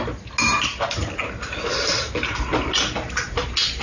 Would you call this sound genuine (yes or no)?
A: yes